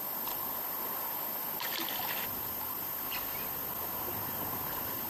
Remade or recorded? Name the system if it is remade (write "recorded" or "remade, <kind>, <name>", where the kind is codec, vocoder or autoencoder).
recorded